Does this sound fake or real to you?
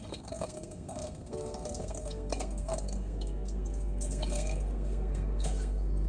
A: fake